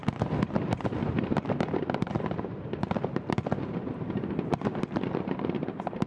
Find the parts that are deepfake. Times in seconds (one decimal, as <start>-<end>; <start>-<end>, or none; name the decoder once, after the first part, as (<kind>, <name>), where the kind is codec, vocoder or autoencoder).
0.6-3.4 (vocoder, BigVGAN v2); 4.8-6.1